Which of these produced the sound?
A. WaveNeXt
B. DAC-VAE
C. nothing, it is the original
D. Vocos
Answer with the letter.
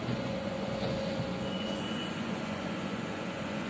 D